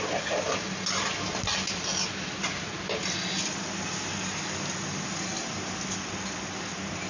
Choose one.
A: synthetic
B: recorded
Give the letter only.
B